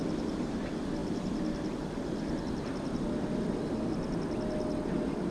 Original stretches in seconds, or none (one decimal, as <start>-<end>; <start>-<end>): 0.0-5.3

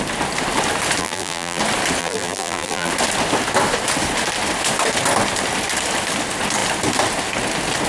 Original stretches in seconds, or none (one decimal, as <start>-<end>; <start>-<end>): 0.0-1.0; 1.6-2.0; 2.9-7.9

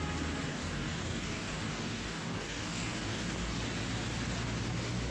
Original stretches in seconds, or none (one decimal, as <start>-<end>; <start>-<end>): 0.0-0.5; 3.6-5.1